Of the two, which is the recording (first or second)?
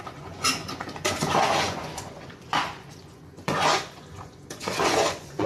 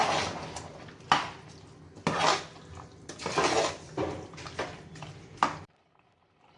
second